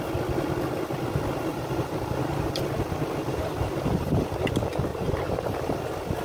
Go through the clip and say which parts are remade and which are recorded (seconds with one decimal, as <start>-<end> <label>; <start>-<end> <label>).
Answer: 0.0-1.5 recorded; 1.5-2.6 remade; 2.6-3.3 recorded; 3.3-4.5 remade; 4.5-4.9 recorded; 4.9-5.8 remade; 5.8-6.2 recorded